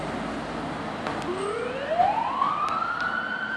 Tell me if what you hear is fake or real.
real